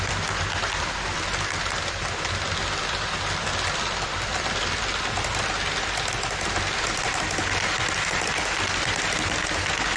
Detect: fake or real real